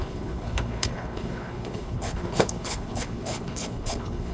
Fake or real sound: fake